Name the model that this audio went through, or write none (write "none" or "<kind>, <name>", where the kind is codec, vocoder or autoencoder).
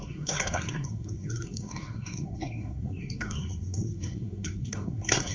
codec, SNAC